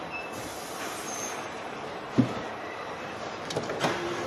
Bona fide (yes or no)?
yes